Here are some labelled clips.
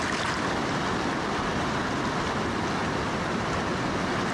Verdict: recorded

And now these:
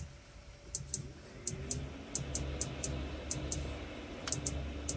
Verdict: recorded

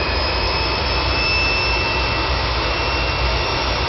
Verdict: recorded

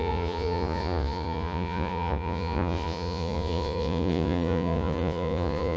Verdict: remade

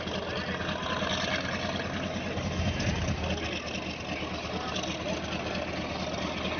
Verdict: recorded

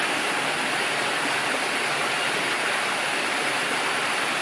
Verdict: recorded